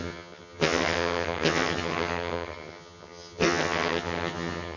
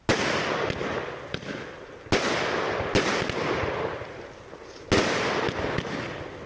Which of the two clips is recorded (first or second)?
second